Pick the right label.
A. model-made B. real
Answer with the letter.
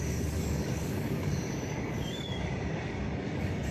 A